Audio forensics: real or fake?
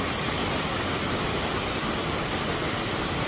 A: real